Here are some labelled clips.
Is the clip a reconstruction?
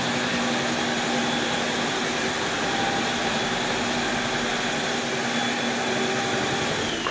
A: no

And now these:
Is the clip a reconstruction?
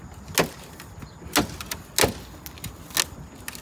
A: no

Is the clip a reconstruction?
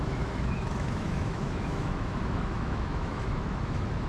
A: yes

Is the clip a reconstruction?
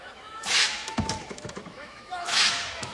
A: yes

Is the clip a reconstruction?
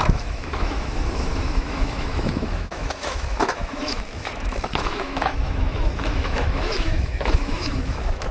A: yes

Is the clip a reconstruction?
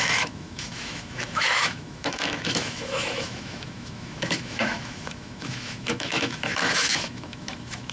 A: yes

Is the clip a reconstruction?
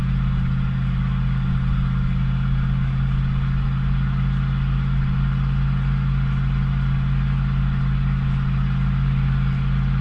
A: no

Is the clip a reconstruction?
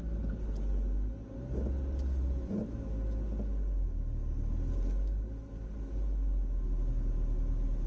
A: no